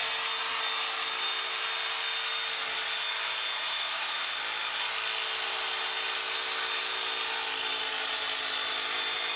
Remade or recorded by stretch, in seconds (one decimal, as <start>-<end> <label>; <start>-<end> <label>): 0.0-3.7 recorded; 3.7-4.4 remade; 4.4-9.4 recorded